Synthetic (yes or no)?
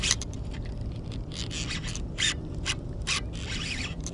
yes